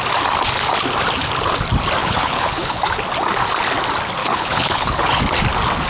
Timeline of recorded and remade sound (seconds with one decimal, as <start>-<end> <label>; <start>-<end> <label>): 0.0-2.0 recorded; 2.0-2.8 remade; 2.8-4.2 recorded; 4.2-5.2 remade; 5.2-5.9 recorded